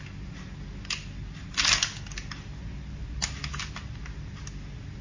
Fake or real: real